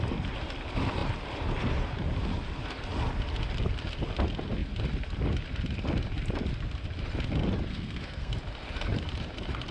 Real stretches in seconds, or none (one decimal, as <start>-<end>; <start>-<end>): 0.0-7.7; 8.3-9.7

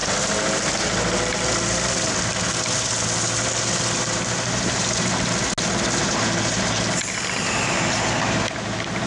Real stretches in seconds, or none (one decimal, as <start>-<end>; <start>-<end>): 0.0-9.1